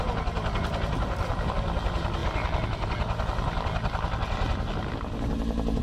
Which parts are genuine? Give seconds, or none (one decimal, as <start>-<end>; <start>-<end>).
0.0-5.8